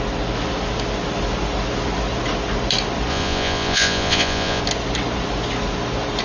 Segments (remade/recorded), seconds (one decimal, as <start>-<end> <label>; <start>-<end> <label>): 0.0-3.1 recorded; 3.1-4.6 remade; 4.6-6.2 recorded